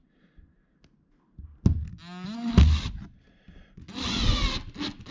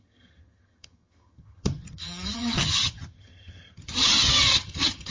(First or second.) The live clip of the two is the first